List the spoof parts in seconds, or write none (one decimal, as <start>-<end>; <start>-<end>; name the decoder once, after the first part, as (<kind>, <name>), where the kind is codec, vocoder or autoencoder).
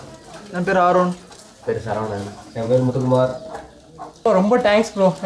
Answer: 2.2-2.9 (autoencoder, DAC-VAE)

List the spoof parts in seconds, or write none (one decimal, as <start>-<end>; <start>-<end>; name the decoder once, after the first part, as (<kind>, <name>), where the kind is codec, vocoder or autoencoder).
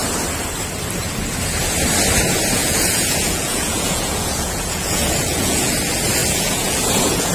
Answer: 2.6-5.7 (vocoder, Vocos); 6.2-7.3